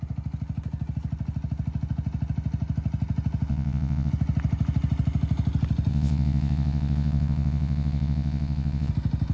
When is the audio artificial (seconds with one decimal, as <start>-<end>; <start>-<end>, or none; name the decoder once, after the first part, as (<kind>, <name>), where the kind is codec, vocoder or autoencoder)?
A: 3.5-4.1 (vocoder, Vocos); 5.9-8.9